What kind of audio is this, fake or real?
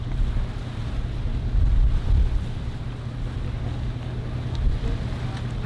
real